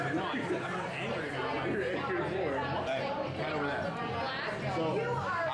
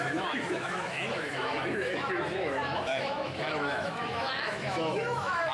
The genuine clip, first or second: first